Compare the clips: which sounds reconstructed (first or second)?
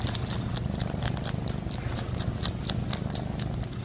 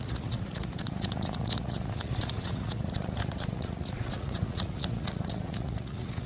second